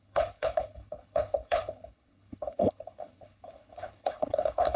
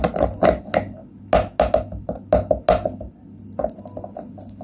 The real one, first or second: second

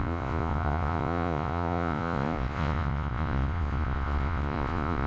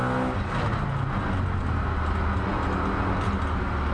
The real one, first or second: second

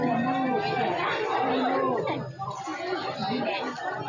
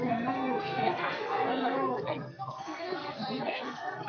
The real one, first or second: first